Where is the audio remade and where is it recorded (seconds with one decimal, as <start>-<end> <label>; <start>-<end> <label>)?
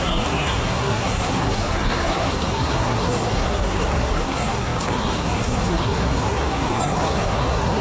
0.0-7.8 remade